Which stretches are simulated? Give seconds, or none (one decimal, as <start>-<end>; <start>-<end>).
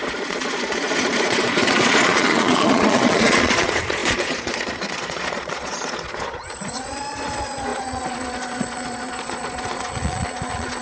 0.0-10.8